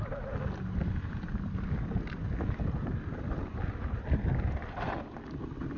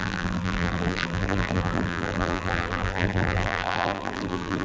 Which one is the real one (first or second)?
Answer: first